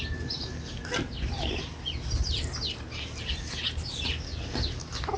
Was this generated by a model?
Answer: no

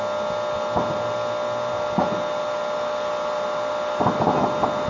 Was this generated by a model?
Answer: no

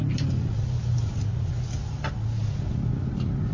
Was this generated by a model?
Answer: no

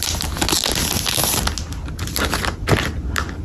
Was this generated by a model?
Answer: no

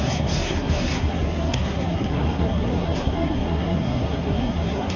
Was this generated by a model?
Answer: yes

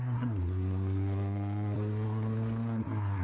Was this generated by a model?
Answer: yes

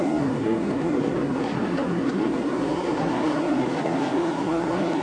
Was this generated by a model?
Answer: yes